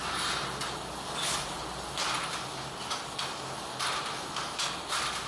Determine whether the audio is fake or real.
real